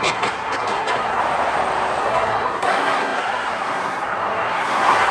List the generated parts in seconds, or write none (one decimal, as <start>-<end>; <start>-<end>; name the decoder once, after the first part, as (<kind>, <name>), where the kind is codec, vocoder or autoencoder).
0.0-1.2 (codec, SNAC); 2.0-5.1